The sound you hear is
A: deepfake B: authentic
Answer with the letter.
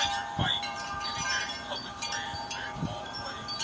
A